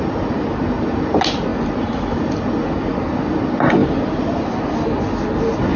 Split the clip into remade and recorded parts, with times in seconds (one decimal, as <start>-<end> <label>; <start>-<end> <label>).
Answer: 0.0-1.5 recorded; 1.5-2.4 remade; 2.4-3.8 recorded; 3.8-5.0 remade; 5.0-5.8 recorded